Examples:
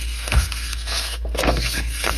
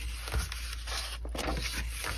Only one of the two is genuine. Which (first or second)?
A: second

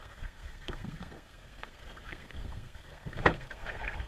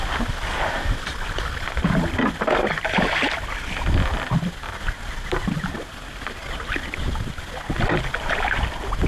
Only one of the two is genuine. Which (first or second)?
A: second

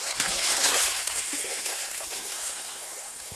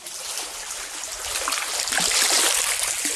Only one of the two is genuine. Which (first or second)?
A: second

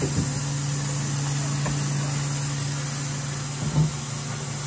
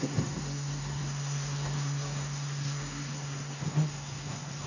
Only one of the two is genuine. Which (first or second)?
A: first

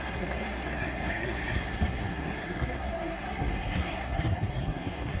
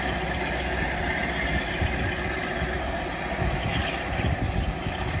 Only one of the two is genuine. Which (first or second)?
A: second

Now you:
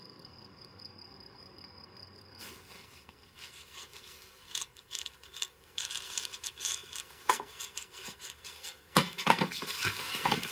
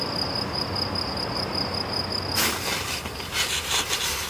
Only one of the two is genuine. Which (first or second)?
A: second